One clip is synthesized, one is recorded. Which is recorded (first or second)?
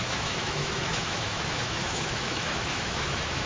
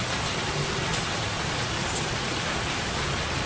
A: second